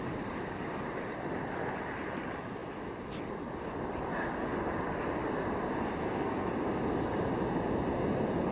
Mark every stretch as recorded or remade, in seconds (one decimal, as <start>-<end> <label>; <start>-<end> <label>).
0.0-6.0 recorded; 6.0-6.5 remade; 6.5-8.5 recorded